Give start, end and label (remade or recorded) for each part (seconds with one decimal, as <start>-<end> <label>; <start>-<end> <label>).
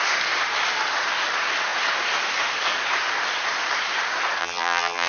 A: 0.0-4.4 recorded; 4.4-5.1 remade